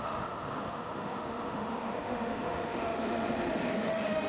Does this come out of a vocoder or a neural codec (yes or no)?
yes